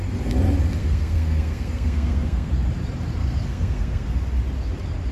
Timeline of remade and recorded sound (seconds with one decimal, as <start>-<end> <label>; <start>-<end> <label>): 0.0-0.8 recorded; 0.8-2.5 remade; 2.5-3.2 recorded; 3.2-4.2 remade; 4.2-5.1 recorded